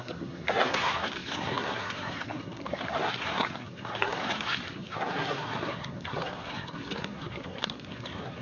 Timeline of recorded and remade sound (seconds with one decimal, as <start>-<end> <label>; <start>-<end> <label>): 0.0-8.4 remade